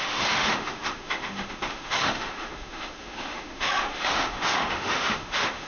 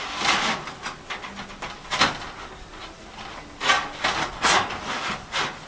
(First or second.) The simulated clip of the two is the first